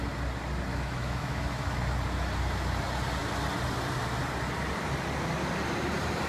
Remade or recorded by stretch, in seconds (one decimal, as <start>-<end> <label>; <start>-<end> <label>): 0.0-0.7 recorded; 0.7-1.8 remade; 1.8-6.3 recorded